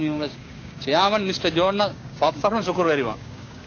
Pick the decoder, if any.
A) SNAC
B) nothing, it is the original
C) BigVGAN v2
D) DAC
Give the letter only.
D